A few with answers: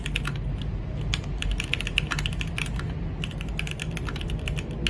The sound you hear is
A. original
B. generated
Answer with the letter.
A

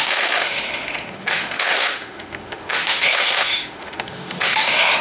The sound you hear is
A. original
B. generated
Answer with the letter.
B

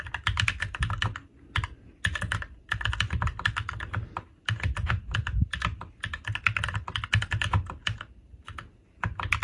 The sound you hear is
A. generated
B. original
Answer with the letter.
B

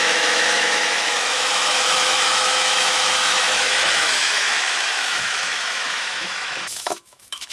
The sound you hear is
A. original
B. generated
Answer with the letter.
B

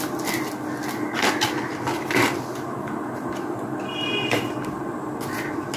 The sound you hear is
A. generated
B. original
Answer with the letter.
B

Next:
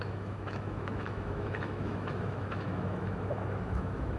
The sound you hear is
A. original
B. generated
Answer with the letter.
B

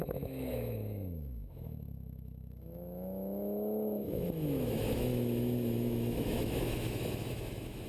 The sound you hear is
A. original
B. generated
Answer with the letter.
B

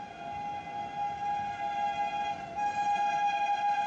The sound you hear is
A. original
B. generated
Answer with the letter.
A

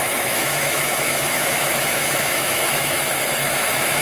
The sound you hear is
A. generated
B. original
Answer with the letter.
A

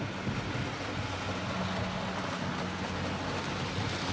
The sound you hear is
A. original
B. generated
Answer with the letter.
A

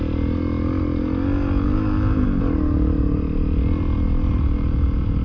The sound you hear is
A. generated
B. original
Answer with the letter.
B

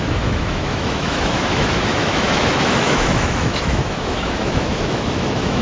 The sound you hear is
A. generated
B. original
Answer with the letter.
A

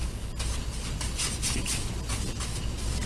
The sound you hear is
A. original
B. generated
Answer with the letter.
A